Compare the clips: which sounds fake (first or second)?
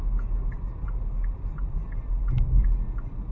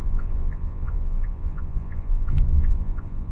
second